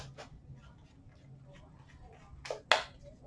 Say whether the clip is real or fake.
real